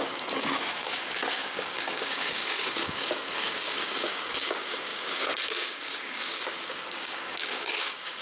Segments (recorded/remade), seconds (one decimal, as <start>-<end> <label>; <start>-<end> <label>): 0.0-8.2 remade